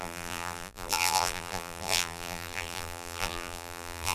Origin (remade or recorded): remade